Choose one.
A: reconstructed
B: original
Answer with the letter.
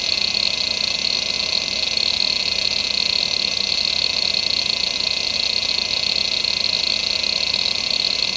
B